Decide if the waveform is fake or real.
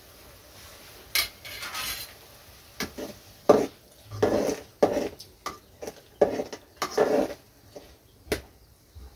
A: real